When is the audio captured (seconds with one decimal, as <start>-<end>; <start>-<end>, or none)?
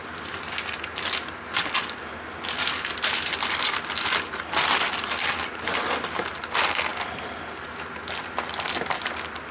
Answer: 0.0-9.5